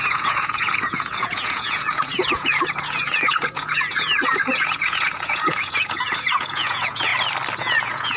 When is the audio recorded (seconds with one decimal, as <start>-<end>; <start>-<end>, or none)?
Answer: 7.1-7.6